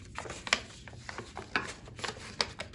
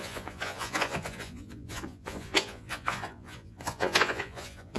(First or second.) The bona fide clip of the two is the first